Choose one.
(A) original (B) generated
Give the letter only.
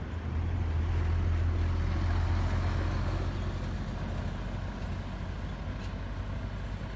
A